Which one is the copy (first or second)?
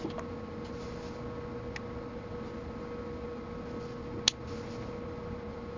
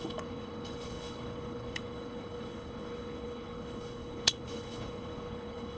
second